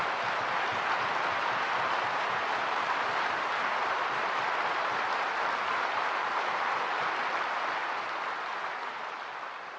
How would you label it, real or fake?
real